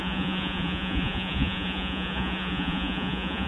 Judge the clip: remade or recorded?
remade